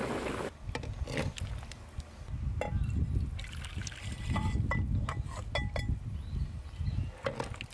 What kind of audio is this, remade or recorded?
recorded